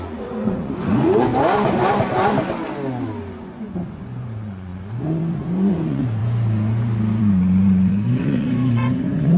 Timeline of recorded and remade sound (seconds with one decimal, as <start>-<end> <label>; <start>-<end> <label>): 0.0-1.3 remade; 1.3-3.3 recorded; 3.3-6.2 remade; 6.2-7.2 recorded; 7.2-9.4 remade